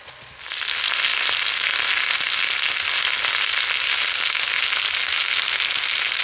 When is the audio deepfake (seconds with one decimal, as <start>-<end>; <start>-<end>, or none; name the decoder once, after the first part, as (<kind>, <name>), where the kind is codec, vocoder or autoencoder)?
none